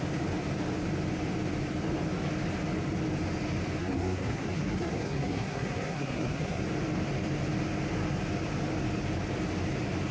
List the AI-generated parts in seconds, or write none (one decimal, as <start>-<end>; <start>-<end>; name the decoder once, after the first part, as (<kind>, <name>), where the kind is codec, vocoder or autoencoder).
3.8-6.6 (codec, SNAC)